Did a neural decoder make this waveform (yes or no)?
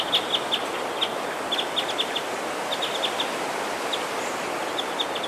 no